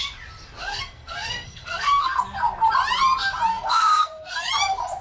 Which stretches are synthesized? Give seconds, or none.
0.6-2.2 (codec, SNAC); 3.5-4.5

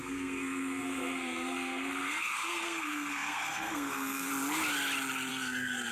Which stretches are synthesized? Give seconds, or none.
0.0-4.3 (codec, SNAC); 5.3-5.9